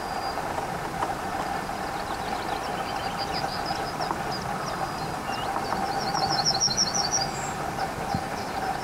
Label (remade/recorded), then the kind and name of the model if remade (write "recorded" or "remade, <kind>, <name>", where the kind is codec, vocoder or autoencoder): recorded